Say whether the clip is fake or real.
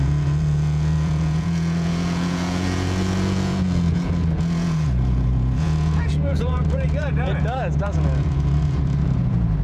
fake